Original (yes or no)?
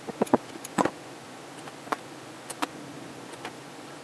no